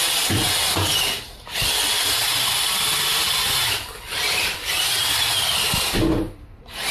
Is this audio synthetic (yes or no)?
no